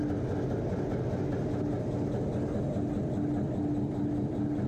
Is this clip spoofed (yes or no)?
no